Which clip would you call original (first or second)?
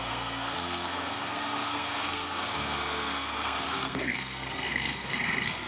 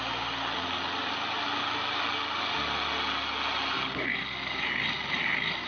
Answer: second